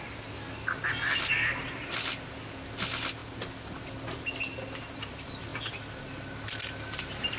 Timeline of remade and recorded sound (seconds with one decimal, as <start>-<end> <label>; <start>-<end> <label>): 0.0-7.4 recorded